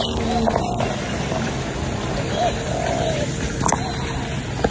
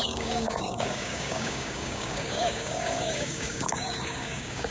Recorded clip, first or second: first